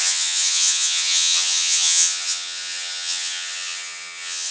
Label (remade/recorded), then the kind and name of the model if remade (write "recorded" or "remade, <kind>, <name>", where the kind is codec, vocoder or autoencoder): remade, vocoder, HiFi-GAN